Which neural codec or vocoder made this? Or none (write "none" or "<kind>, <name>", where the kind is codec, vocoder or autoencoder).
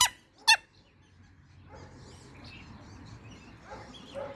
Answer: none